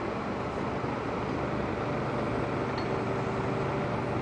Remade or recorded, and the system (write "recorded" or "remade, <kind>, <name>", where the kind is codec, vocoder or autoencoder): recorded